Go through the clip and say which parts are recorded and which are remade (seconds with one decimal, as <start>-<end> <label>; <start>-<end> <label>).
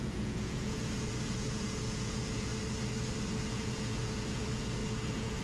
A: 0.0-2.5 remade; 2.5-3.5 recorded; 3.5-5.4 remade